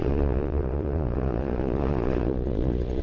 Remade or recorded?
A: remade